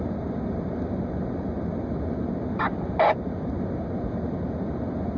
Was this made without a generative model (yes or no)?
yes